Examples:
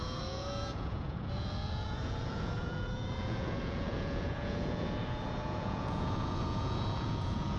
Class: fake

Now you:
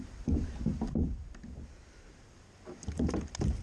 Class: real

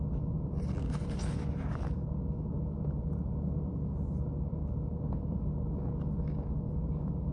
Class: real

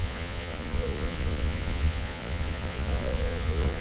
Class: fake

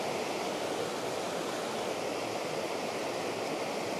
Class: real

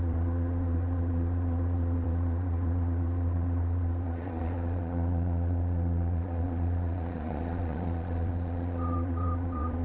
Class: fake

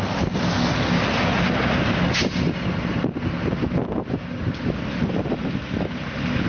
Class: real